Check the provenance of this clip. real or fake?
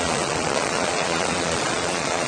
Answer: fake